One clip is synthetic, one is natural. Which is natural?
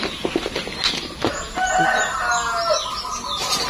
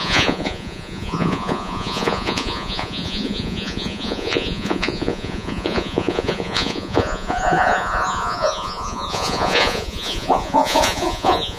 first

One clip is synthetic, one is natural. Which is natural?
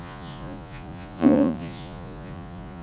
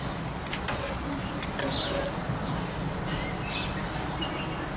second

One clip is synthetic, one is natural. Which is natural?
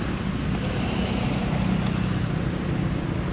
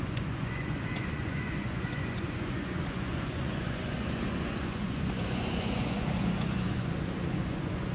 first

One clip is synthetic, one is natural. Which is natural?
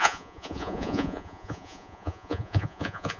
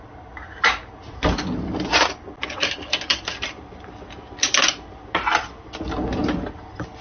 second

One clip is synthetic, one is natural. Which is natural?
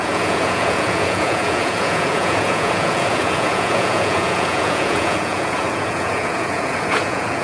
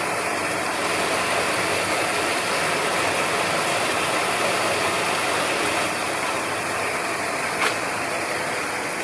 second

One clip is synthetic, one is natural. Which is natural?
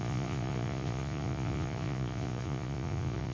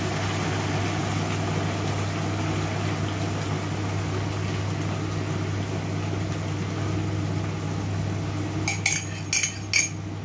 second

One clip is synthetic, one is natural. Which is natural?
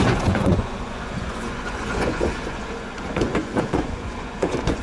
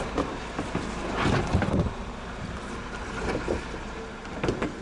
second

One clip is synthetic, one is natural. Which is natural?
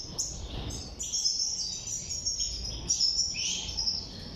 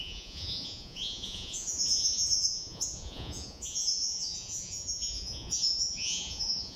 first